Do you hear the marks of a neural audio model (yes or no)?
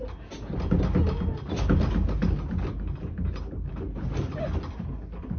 no